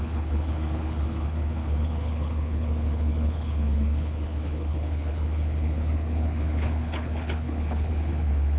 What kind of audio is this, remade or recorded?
remade